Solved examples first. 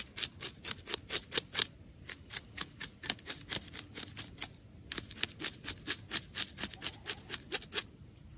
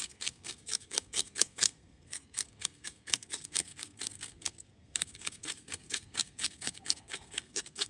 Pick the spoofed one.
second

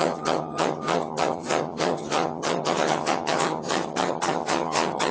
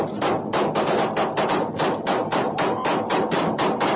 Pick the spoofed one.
first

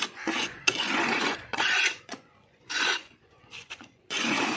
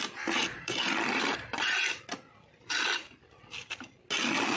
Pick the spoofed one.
first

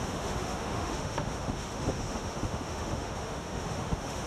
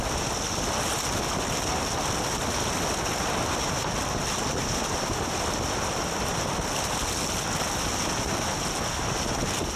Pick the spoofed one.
first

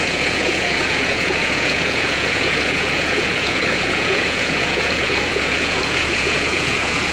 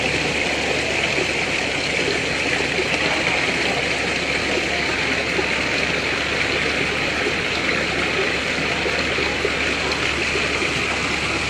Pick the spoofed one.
first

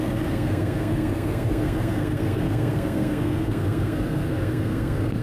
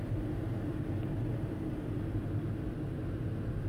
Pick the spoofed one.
first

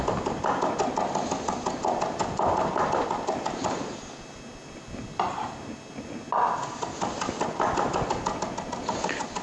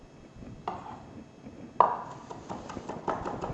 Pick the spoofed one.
second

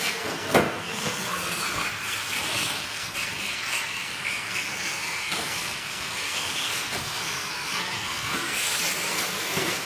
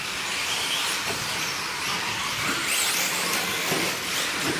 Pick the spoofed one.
first